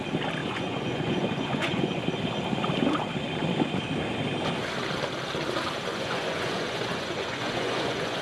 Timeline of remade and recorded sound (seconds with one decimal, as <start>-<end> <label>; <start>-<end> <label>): 0.0-0.4 recorded; 0.4-2.0 remade; 2.0-5.9 recorded; 5.9-8.2 remade